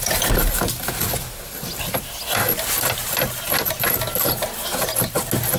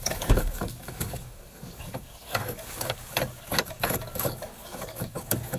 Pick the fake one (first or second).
second